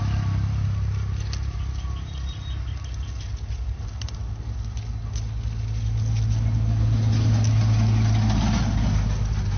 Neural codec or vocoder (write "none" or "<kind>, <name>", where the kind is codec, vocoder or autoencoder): none